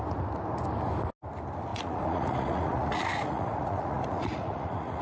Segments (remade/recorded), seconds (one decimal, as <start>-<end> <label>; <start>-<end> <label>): 0.0-1.7 recorded; 1.7-5.0 remade